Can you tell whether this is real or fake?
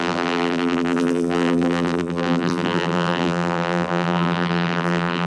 fake